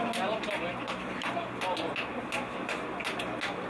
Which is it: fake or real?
real